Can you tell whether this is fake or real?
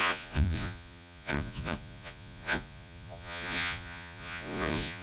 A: fake